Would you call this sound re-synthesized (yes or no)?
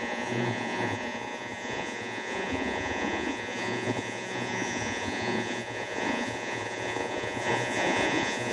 yes